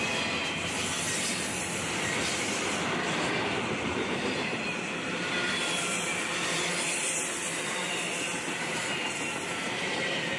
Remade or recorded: remade